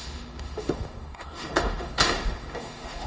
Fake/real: fake